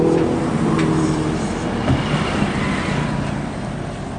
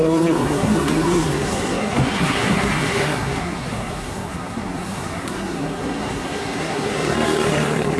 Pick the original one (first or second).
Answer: first